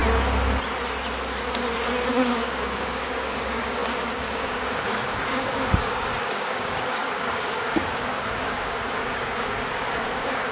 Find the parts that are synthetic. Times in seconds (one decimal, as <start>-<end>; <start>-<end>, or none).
2.1-10.5